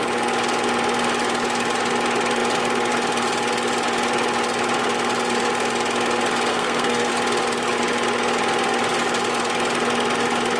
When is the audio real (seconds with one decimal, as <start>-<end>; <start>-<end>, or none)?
0.0-6.5; 7.1-10.6